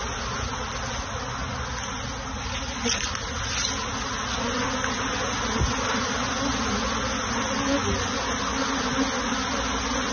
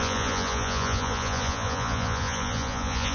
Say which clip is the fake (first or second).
second